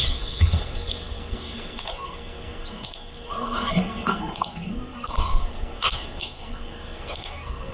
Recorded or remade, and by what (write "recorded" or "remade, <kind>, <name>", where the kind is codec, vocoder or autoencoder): remade, codec, SNAC